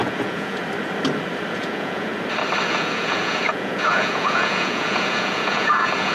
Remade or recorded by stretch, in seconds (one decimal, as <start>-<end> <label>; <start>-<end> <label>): 0.0-0.6 remade; 0.6-1.5 recorded; 1.5-2.1 remade; 2.1-2.7 recorded; 2.7-6.1 remade